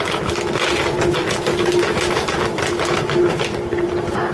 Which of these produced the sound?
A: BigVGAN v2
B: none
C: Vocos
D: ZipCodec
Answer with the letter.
B